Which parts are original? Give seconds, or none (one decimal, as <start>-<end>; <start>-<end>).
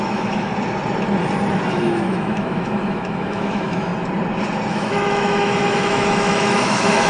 0.5-1.7; 3.9-4.7